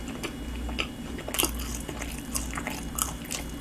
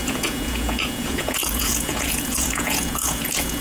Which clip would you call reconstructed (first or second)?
second